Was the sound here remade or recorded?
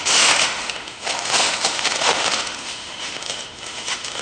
remade